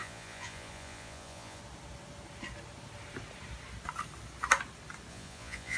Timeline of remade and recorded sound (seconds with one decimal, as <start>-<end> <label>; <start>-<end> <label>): 0.0-1.6 remade; 1.6-5.1 recorded; 5.1-5.8 remade